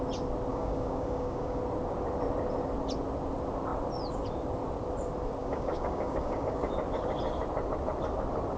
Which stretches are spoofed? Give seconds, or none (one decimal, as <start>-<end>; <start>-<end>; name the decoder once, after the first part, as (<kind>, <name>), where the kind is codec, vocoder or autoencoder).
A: 0.5-1.6 (codec, DAC); 5.4-6.7